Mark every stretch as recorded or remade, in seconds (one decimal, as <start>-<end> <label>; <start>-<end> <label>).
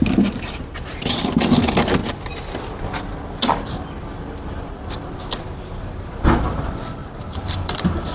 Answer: 0.0-7.0 recorded; 7.0-8.1 remade